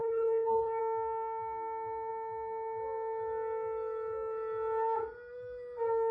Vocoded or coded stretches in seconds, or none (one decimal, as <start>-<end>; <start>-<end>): 0.0-0.8